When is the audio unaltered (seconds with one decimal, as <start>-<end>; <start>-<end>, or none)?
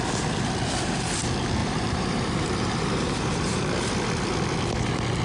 0.0-1.6; 3.6-5.2